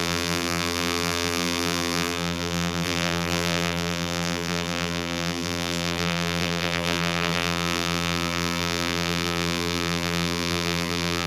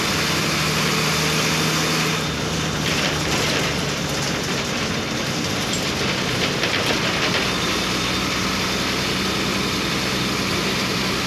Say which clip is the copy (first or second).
first